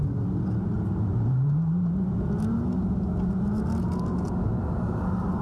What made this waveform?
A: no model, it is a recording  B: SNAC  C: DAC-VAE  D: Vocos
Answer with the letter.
A